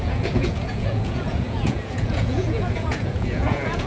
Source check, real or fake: fake